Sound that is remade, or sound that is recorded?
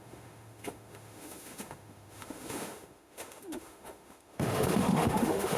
remade